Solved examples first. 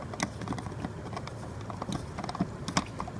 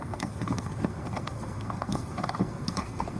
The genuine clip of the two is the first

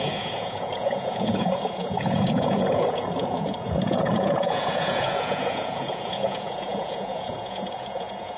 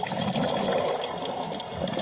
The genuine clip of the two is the second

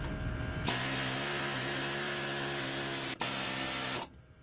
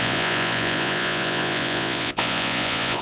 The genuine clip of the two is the first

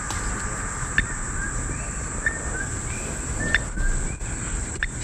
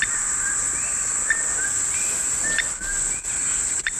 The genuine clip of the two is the second